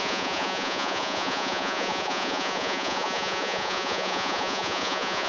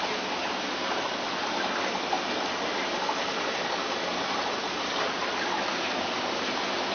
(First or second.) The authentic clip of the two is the second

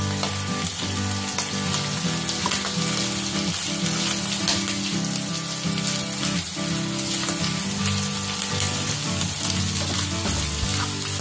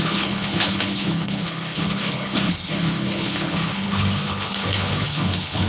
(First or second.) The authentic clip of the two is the first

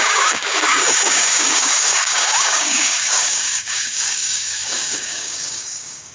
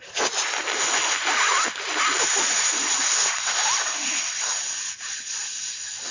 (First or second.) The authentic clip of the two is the second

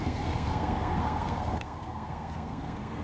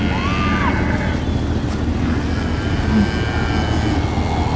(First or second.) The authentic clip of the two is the second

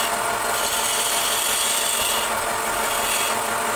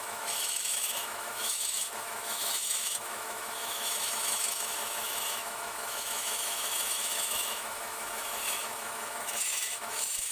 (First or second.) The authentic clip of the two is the first